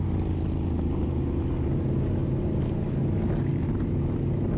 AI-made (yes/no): no